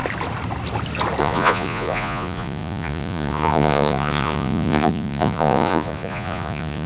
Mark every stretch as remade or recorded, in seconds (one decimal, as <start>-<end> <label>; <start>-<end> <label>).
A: 0.0-1.2 recorded; 1.2-6.9 remade